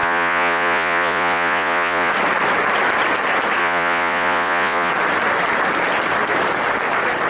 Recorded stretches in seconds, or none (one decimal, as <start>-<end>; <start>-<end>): 2.1-3.6; 4.9-7.3